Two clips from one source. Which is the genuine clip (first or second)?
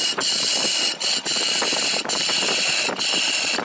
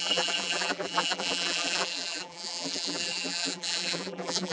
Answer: first